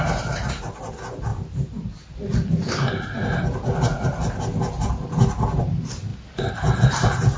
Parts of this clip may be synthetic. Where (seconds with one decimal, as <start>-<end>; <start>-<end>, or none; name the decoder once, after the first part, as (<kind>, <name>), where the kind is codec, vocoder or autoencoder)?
none